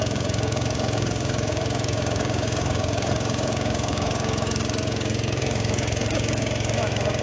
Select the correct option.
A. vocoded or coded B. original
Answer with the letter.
A